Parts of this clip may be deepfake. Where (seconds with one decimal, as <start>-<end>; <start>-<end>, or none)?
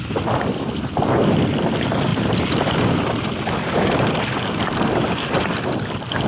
none